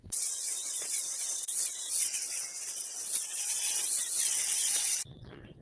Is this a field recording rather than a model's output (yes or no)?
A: no